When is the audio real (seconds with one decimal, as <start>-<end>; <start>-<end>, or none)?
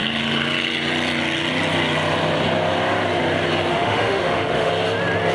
0.0-3.7; 4.7-5.3